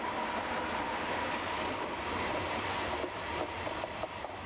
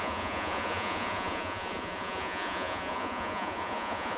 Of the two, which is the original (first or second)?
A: first